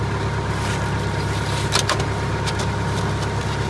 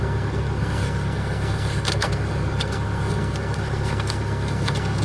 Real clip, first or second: first